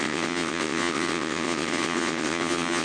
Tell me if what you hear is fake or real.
fake